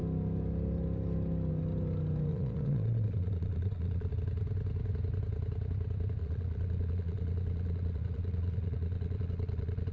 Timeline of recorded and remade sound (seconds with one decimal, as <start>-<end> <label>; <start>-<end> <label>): 0.0-2.3 recorded; 2.3-4.1 remade; 4.1-6.2 recorded; 6.2-9.9 remade